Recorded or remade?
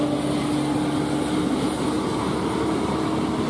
recorded